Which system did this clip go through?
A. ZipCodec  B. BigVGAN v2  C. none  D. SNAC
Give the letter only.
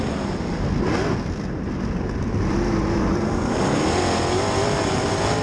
C